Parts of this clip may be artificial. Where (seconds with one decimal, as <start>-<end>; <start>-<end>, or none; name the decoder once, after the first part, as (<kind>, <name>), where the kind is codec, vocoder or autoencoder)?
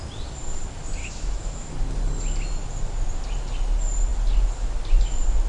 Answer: 1.0-1.7 (autoencoder, DAC-VAE)